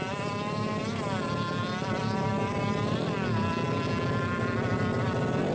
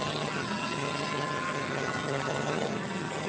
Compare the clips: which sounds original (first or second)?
first